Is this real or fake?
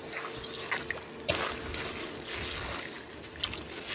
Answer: real